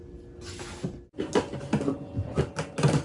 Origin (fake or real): real